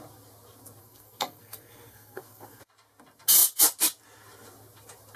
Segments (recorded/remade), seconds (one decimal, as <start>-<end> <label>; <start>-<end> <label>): 0.0-0.8 recorded; 0.8-2.6 remade; 2.6-5.2 recorded